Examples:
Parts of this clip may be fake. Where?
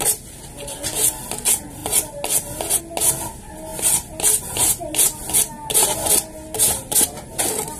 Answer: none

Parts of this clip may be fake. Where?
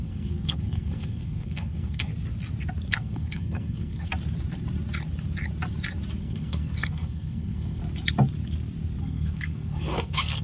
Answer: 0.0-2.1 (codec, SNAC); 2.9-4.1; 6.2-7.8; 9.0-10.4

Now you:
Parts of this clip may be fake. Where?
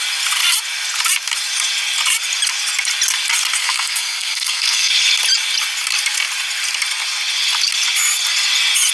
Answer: 3.6-4.9 (codec, SNAC)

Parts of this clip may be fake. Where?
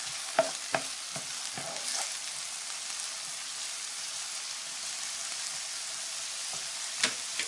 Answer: none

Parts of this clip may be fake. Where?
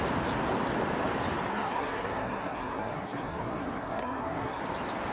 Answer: 1.5-4.6 (codec, SNAC)